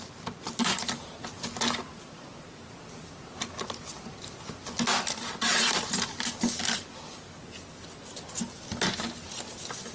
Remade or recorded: recorded